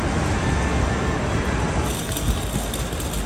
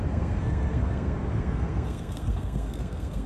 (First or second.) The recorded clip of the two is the first